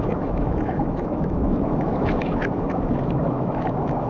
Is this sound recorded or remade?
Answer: remade